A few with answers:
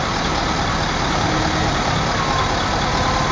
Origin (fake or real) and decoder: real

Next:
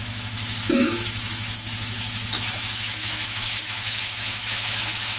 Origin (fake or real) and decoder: fake, autoencoder, DAC-VAE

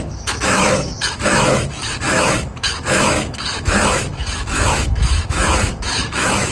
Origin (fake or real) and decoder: fake, autoencoder, DAC-VAE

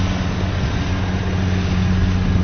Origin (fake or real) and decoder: real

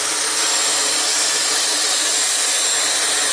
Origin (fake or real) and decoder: real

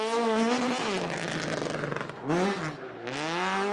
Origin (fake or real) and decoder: real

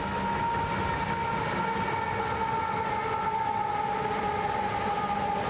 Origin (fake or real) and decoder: real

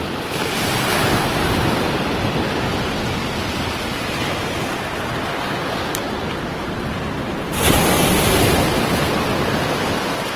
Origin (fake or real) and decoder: real